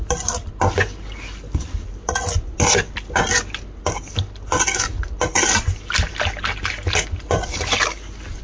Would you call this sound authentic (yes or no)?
yes